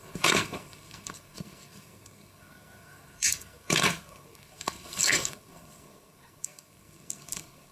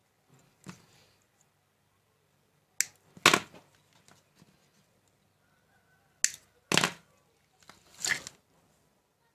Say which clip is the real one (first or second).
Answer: second